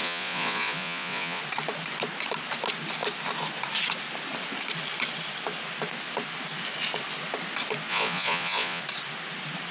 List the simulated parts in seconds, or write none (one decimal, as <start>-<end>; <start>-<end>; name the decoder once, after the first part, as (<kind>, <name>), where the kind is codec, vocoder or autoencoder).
0.0-1.4 (vocoder, Vocos); 7.9-8.8